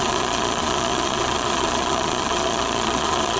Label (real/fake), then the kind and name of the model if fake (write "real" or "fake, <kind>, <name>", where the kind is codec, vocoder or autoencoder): fake, vocoder, Vocos